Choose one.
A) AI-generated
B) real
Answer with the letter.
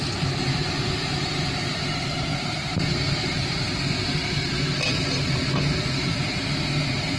A